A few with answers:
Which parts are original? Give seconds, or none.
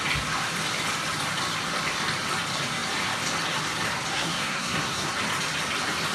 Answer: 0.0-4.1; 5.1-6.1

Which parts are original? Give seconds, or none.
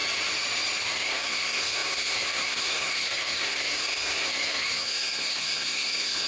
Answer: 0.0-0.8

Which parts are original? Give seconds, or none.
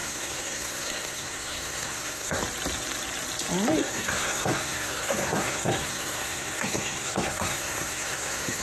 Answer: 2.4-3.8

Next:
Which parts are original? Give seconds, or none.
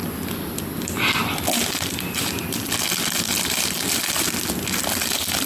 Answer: 0.5-1.2; 4.5-5.5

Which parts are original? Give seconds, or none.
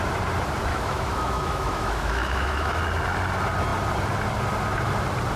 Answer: 0.0-0.7; 2.8-5.4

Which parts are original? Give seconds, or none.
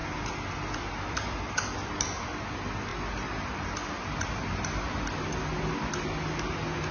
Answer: 0.0-6.9